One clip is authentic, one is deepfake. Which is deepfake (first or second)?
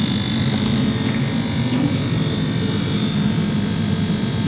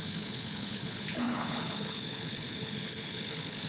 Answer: second